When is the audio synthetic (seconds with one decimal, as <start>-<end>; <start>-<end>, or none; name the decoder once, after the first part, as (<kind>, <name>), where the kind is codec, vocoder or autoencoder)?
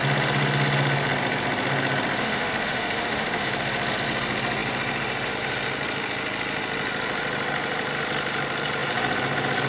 2.2-3.5 (autoencoder, DAC-VAE)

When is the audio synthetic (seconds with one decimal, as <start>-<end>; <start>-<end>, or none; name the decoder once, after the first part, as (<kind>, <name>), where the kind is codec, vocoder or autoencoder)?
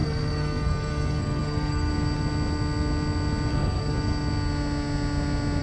0.0-1.9 (codec, SNAC)